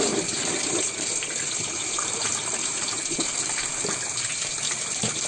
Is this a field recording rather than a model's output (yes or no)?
no